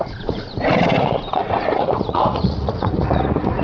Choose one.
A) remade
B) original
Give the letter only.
A